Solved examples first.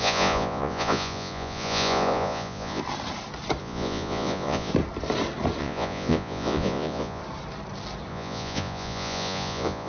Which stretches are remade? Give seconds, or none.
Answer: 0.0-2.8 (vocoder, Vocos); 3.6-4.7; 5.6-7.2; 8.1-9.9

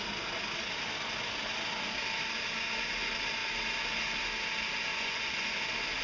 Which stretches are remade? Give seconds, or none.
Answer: 4.9-5.6 (vocoder, Vocos)

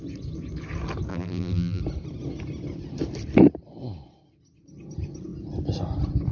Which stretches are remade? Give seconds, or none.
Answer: 1.1-1.8 (vocoder, BigVGAN v2)

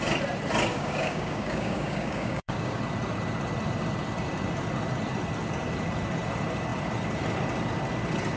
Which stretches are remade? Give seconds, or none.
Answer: 0.7-2.8 (codec, DAC)

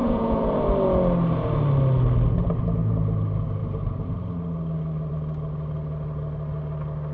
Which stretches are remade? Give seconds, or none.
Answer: 0.0-0.6 (vocoder, Vocos)